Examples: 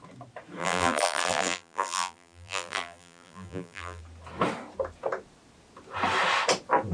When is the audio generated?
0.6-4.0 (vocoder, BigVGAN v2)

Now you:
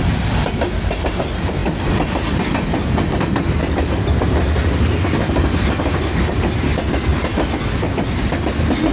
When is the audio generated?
none

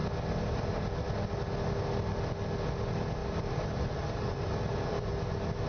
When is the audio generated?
3.2-5.1 (vocoder, BigVGAN v2)